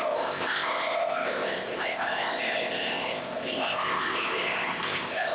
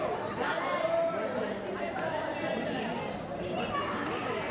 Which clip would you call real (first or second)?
second